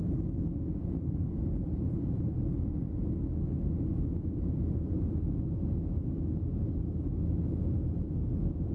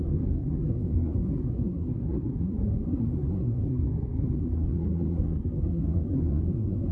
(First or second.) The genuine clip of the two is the first